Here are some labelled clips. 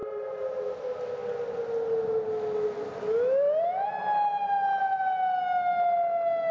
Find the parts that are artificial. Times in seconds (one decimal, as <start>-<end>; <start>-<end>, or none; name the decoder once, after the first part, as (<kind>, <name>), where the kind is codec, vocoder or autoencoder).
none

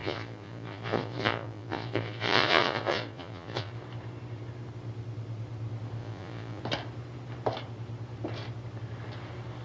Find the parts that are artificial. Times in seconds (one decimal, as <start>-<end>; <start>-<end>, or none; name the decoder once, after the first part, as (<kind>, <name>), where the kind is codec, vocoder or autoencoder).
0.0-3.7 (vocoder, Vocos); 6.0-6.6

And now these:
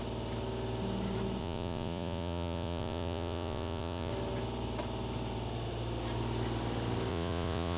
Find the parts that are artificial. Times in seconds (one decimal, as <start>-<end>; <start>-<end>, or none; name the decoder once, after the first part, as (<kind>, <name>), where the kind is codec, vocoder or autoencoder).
1.4-4.1 (vocoder, Vocos); 7.1-7.8

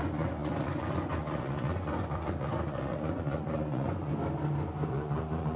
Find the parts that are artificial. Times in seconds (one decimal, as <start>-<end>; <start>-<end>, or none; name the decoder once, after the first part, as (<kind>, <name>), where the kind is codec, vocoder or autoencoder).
0.0-4.1 (vocoder, Vocos); 4.9-5.6

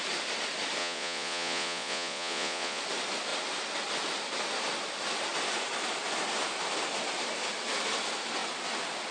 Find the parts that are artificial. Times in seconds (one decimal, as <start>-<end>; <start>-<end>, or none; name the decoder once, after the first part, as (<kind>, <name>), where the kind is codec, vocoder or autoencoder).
0.8-2.8 (vocoder, Vocos)

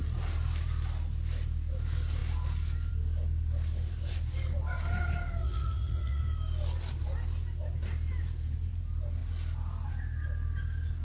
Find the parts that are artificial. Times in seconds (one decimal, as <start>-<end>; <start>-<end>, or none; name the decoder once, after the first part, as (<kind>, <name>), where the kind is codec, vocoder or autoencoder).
5.4-6.2 (vocoder, Vocos)

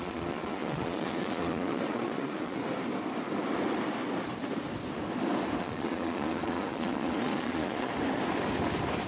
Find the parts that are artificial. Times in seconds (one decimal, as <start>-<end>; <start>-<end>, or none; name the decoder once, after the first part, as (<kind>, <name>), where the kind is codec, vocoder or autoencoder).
0.0-2.6 (vocoder, Vocos); 5.6-7.9

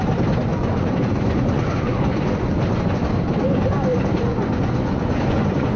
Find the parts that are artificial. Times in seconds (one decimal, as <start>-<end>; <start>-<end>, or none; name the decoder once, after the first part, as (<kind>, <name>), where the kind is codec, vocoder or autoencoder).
0.5-3.0 (vocoder, Vocos); 4.3-5.8